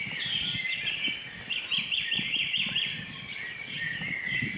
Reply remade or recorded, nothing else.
recorded